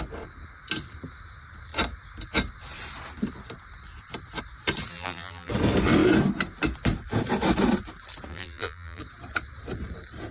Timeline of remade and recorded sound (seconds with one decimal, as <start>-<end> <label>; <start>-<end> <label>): 0.0-4.9 recorded; 4.9-5.5 remade; 5.5-8.3 recorded; 8.3-9.0 remade; 9.0-10.3 recorded